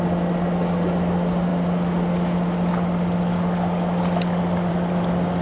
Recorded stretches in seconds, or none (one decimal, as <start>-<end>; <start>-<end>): 0.0-5.4